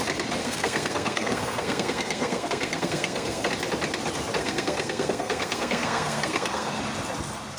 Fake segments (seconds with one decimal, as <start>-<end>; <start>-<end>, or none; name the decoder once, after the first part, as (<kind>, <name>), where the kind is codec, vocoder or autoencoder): 0.4-3.5 (codec, SNAC); 4.4-6.8